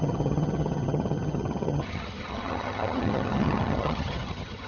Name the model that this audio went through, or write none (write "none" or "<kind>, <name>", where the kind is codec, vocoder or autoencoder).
vocoder, HiFi-GAN